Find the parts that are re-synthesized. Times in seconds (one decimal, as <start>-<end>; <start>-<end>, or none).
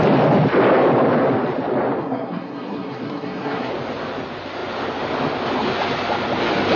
2.0-3.7